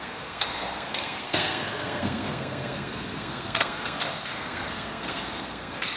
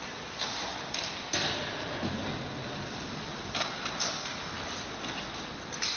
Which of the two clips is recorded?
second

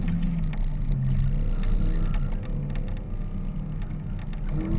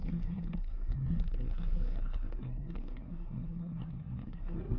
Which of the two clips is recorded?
first